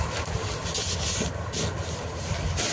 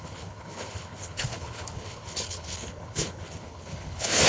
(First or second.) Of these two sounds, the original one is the first